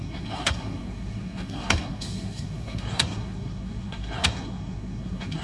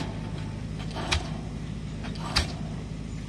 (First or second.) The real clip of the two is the second